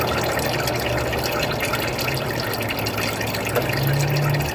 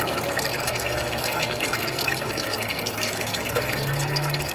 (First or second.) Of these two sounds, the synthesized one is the second